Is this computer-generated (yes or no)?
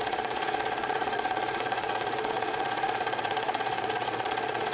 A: yes